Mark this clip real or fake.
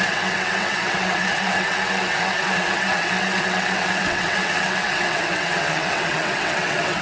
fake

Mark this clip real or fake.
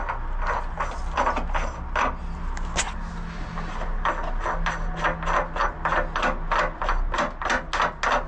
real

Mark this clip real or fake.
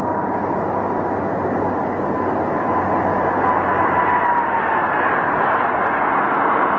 real